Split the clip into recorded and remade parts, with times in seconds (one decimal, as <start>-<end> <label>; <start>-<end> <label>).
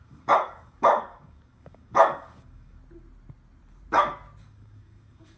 0.0-2.8 remade; 2.8-4.4 recorded; 4.4-5.4 remade